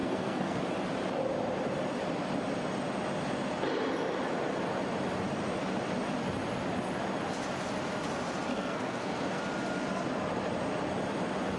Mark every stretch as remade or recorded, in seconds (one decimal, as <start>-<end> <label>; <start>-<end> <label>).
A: 0.0-0.6 remade; 0.6-8.5 recorded; 8.5-9.4 remade; 9.4-11.6 recorded